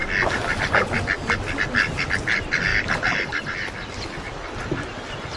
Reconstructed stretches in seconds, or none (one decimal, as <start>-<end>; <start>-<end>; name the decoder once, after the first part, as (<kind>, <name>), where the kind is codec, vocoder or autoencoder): 2.7-4.2 (vocoder, BigVGAN v2)